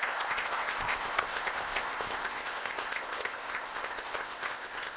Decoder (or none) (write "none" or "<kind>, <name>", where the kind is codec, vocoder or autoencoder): codec, ZipCodec